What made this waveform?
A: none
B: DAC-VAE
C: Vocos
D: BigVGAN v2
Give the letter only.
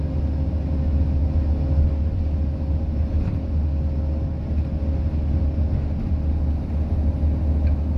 A